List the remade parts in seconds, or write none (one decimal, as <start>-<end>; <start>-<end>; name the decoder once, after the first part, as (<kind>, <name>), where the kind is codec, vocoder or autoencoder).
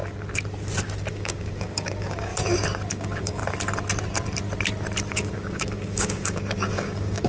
1.1-2.3 (codec, DAC); 2.9-3.4; 5.1-7.3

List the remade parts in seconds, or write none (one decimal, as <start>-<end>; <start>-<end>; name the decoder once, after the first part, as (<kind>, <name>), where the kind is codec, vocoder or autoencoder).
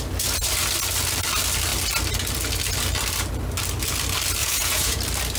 4.4-5.0 (vocoder, Vocos)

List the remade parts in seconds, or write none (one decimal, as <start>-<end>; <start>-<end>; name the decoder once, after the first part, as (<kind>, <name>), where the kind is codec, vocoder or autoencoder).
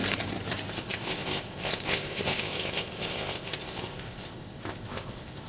0.7-5.5 (codec, ZipCodec)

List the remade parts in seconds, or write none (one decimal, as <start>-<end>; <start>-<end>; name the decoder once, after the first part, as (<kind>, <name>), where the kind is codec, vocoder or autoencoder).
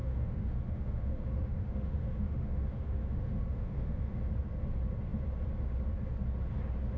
0.0-4.2 (autoencoder, DAC-VAE)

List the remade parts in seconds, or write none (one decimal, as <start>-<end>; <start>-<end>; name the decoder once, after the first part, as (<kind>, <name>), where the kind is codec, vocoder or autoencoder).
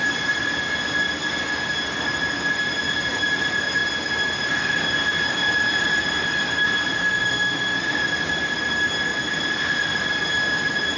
6.9-7.9 (autoencoder, DAC-VAE)